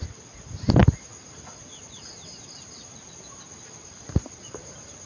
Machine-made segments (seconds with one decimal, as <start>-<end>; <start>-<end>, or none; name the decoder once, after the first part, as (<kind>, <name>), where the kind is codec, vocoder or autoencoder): none